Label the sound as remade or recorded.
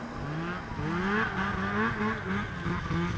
recorded